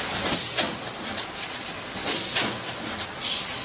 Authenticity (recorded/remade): recorded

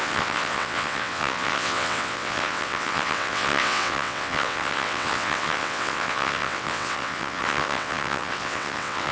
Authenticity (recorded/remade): remade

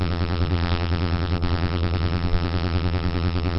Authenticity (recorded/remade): remade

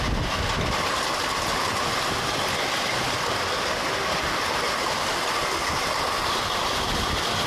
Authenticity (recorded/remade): recorded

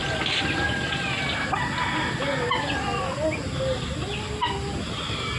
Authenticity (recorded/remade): recorded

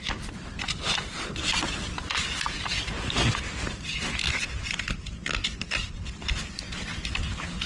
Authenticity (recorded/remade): recorded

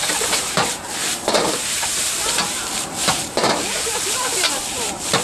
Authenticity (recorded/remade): remade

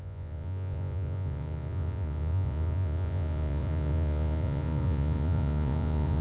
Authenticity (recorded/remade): remade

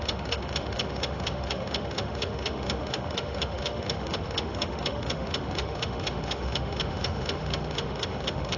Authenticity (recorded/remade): remade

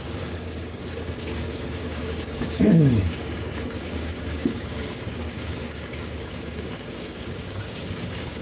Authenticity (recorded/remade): remade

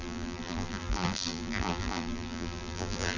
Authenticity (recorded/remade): remade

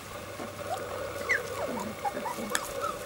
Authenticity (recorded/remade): recorded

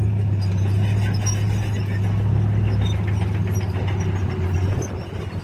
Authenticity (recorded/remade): recorded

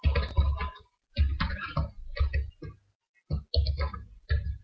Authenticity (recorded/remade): recorded